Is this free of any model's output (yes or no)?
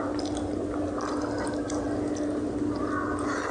yes